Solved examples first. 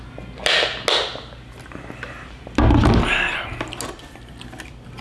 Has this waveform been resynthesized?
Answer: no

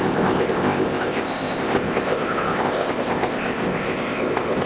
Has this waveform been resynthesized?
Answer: yes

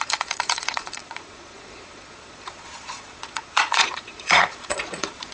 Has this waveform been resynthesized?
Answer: yes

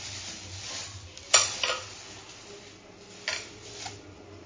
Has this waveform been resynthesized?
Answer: no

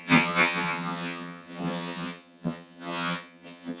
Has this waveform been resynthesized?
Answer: yes